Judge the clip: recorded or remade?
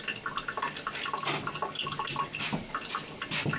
recorded